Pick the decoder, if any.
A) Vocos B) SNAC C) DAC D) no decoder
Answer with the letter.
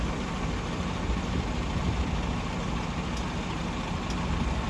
D